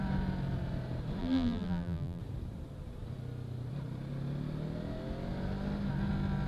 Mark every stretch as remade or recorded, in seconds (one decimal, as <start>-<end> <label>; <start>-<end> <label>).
0.0-1.2 recorded; 1.2-2.2 remade; 2.2-6.5 recorded